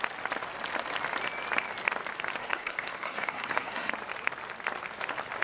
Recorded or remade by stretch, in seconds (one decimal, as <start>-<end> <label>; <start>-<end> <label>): 0.0-2.4 recorded; 2.4-3.9 remade; 3.9-5.4 recorded